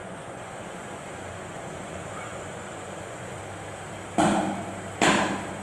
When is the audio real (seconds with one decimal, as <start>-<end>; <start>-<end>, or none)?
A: 3.4-5.6